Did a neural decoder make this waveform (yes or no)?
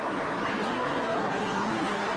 yes